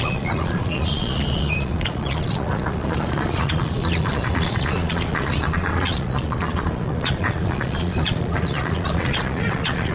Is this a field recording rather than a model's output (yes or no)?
no